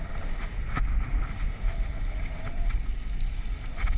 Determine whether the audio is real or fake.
real